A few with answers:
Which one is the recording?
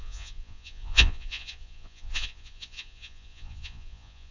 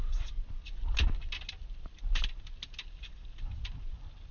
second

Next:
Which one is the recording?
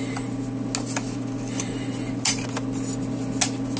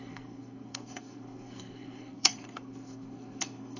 first